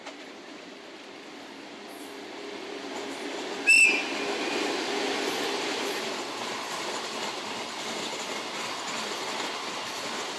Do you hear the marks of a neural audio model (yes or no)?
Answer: no